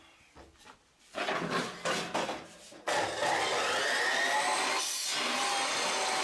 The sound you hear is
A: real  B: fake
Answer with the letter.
A